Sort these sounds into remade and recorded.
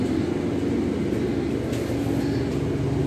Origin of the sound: recorded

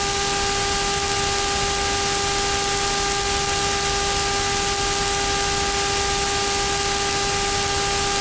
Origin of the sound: recorded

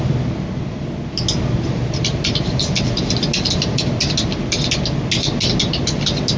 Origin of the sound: recorded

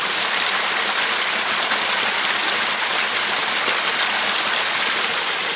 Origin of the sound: recorded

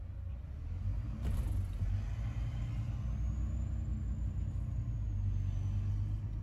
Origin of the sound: recorded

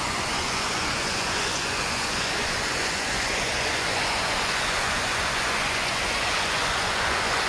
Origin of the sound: remade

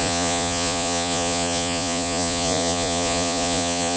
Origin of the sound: remade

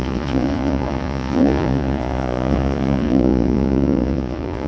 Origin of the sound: remade